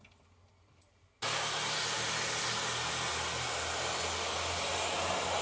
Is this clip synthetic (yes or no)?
no